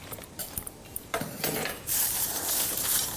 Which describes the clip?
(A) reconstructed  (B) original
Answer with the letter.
A